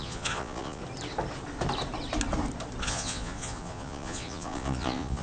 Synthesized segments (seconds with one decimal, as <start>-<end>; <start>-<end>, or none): 0.0-0.8; 2.8-5.2